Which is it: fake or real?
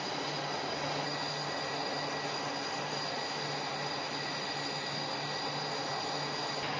real